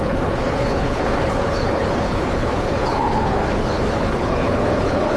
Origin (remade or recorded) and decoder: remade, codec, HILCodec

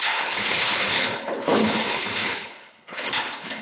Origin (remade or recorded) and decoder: remade, codec, HILCodec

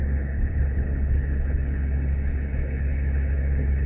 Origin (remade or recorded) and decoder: remade, codec, HILCodec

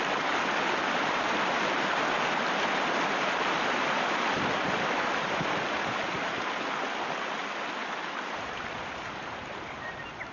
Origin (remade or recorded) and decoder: recorded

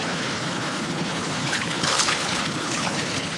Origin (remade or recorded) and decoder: remade, codec, HILCodec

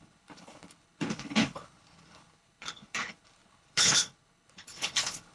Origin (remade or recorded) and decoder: remade, codec, HILCodec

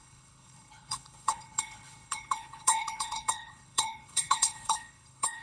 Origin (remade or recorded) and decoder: remade, codec, HILCodec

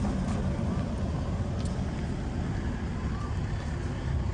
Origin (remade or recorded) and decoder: recorded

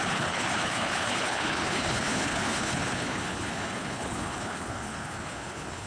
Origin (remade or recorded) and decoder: remade, codec, HILCodec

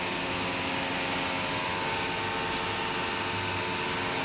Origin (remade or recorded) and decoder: recorded